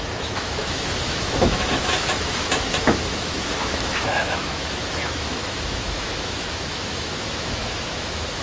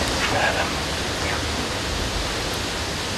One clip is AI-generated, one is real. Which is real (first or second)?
second